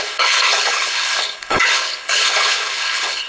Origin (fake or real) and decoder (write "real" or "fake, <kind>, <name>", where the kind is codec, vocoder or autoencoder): fake, codec, HILCodec